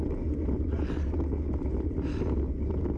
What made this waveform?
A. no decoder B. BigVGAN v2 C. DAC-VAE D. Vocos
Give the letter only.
A